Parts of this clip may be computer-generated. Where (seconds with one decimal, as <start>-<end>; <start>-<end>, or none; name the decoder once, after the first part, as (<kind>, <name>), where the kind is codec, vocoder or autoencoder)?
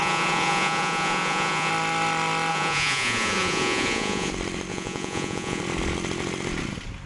0.0-1.7 (vocoder, Vocos); 2.5-4.3; 4.7-5.6